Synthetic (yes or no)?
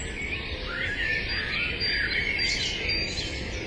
no